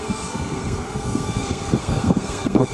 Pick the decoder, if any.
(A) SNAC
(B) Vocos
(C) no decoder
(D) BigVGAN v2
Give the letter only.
A